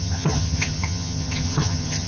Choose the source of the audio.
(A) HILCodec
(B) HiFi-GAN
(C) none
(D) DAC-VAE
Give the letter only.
B